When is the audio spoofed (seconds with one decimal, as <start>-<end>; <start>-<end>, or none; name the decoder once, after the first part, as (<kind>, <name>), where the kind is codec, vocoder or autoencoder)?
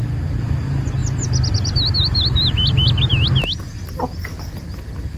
none